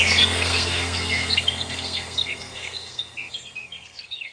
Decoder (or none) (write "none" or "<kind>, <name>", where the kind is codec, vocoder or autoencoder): codec, SNAC